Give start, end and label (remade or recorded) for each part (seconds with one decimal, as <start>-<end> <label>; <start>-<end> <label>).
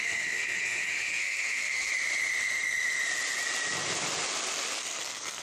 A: 0.0-1.9 remade; 1.9-4.8 recorded; 4.8-5.4 remade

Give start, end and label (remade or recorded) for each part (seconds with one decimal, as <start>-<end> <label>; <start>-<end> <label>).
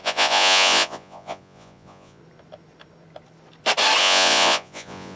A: 0.0-2.2 remade; 2.2-4.0 recorded; 4.0-5.2 remade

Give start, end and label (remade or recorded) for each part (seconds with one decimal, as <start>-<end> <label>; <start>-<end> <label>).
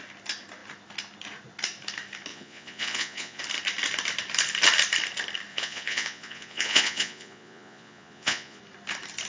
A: 0.0-2.3 recorded; 2.3-3.4 remade; 3.4-5.5 recorded; 5.5-8.6 remade; 8.6-9.3 recorded